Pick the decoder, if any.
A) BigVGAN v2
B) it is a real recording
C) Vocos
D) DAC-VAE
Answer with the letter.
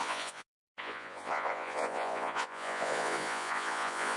C